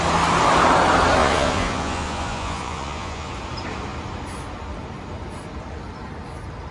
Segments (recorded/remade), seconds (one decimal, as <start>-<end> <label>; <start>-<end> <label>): 0.0-1.2 recorded; 1.2-3.3 remade; 3.3-6.7 recorded